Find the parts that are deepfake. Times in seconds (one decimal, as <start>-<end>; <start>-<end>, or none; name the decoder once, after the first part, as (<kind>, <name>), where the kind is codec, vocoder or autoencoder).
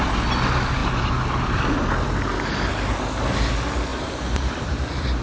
3.9-5.2 (vocoder, BigVGAN v2)